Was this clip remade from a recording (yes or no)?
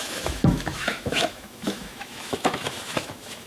yes